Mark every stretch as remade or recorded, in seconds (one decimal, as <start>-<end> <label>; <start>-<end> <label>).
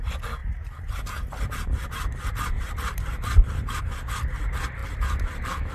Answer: 0.0-0.4 recorded; 0.4-3.8 remade; 3.8-5.7 recorded